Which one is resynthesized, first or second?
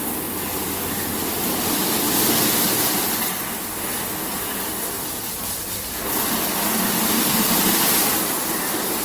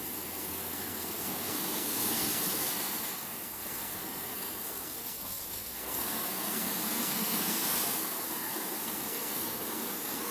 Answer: second